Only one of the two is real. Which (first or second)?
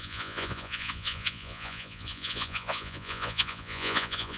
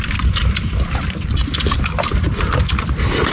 second